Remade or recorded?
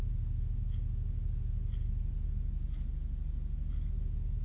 recorded